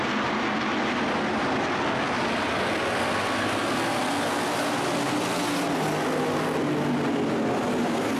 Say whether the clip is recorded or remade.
recorded